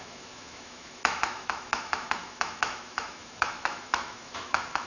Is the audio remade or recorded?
remade